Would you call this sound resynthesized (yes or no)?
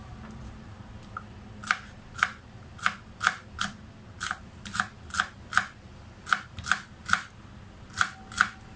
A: no